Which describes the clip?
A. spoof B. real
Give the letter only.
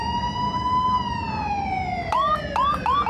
B